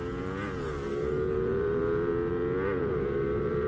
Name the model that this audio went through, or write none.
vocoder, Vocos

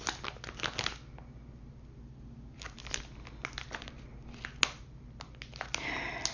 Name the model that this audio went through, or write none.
none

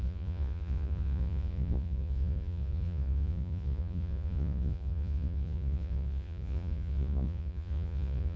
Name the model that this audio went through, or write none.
vocoder, Vocos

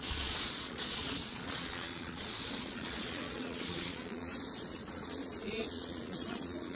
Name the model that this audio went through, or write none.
vocoder, Vocos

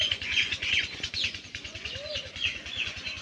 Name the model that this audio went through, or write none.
vocoder, Vocos